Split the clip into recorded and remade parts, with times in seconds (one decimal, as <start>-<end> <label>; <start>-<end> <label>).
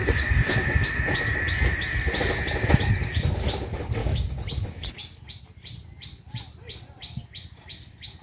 0.0-0.9 remade; 0.9-4.0 recorded; 4.0-5.2 remade; 5.2-8.2 recorded